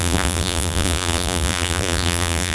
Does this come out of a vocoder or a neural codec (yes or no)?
yes